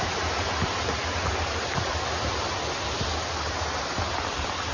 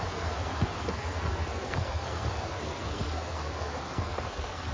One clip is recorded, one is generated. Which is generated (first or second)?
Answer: second